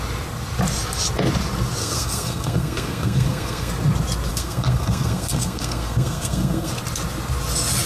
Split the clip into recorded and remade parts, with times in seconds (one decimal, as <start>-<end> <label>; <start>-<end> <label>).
0.0-1.8 recorded; 1.8-3.7 remade; 3.7-4.3 recorded; 4.3-6.7 remade; 6.7-7.9 recorded